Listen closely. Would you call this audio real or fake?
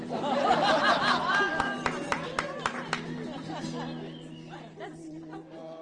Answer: real